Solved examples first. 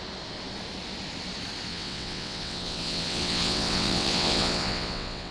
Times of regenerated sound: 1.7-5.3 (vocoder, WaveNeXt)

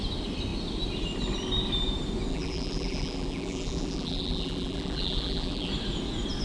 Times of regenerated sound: 2.3-5.7 (vocoder, BigVGAN v2)

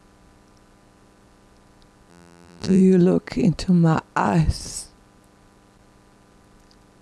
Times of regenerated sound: 2.1-2.8 (vocoder, BigVGAN v2)

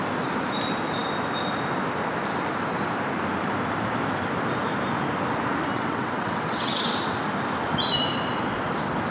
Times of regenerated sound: 5.7-6.8 (vocoder, WaveNeXt)